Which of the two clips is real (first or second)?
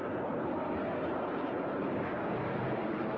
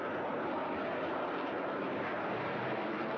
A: second